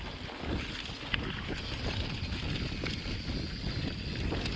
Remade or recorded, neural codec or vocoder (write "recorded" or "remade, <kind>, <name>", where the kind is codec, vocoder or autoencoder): recorded